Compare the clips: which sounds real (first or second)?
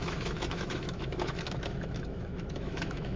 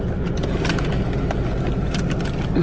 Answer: second